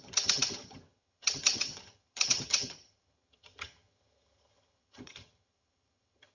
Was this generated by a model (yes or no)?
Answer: yes